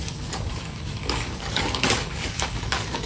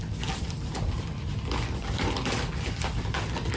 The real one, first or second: second